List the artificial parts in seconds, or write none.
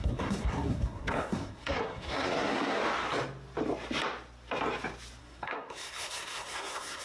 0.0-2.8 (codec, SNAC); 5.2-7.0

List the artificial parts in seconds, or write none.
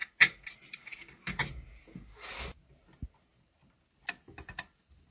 none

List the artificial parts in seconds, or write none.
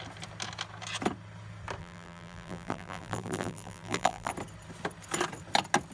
1.8-4.3 (vocoder, BigVGAN v2)